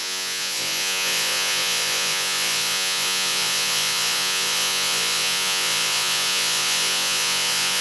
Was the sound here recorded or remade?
remade